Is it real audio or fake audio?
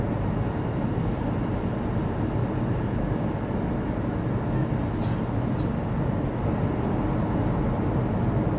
real